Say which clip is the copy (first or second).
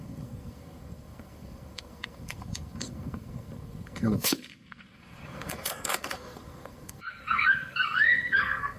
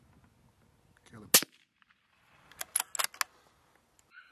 first